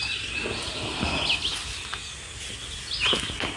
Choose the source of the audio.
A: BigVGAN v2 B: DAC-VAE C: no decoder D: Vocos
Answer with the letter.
C